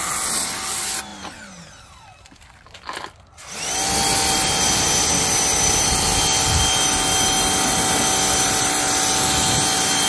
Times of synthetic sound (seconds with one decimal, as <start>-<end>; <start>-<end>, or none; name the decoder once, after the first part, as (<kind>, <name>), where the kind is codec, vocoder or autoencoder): none